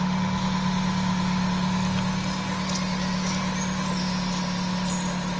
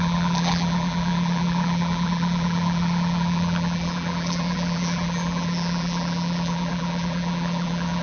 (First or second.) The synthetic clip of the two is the second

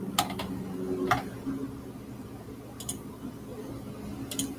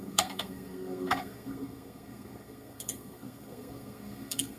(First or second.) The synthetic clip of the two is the second